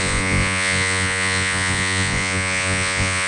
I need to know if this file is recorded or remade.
remade